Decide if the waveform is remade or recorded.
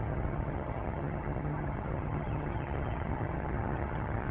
remade